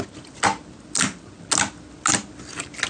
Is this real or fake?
real